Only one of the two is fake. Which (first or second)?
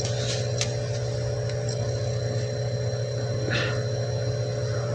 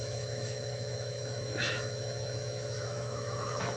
second